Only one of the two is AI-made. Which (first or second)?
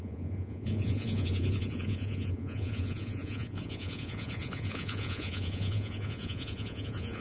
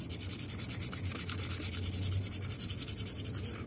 first